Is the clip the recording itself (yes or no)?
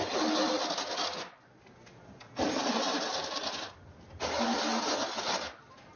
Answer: yes